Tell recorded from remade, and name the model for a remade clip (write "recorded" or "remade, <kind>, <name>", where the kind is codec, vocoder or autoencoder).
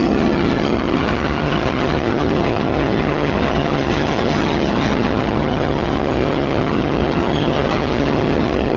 remade, vocoder, HiFi-GAN